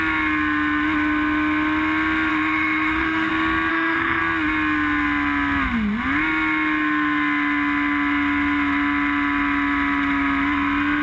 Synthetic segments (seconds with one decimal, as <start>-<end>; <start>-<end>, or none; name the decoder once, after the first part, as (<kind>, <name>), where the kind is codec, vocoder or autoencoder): 2.3-3.3 (autoencoder, DAC-VAE); 3.7-4.2